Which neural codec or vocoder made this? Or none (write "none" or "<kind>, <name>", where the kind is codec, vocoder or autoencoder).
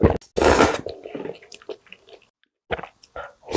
none